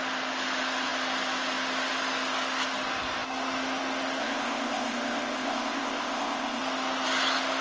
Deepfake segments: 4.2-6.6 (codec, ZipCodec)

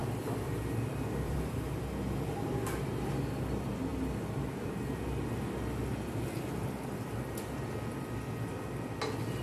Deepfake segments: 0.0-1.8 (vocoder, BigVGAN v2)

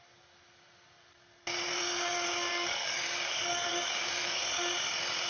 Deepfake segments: 2.5-4.4 (codec, DAC)

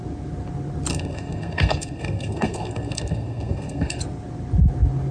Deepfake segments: 0.9-4.0 (codec, SNAC)

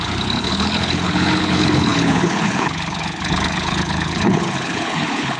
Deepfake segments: 0.0-5.4 (codec, HILCodec)

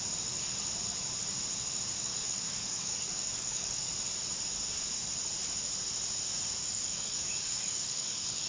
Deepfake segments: 2.1-3.9 (codec, DAC); 6.6-8.5

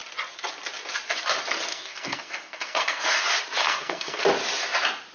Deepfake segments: 1.7-3.2 (codec, SNAC); 3.6-4.2

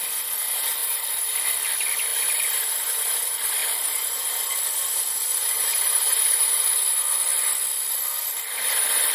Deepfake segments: 0.8-1.4 (vocoder, BigVGAN v2); 3.6-4.5; 5.3-6.7